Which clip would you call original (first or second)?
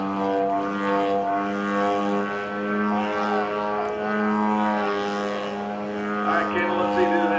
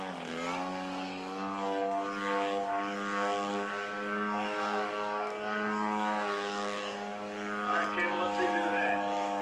first